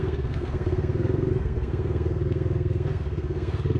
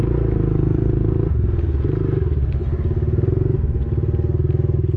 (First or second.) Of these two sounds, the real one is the second